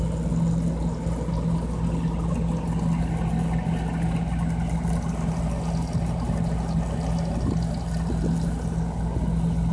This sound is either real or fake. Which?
real